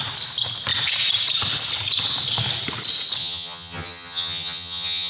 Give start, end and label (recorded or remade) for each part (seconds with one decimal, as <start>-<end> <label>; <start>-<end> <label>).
0.0-3.2 recorded; 3.2-5.1 remade